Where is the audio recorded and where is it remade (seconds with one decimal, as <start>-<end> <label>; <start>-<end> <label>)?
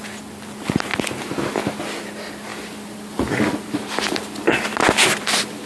0.0-5.7 recorded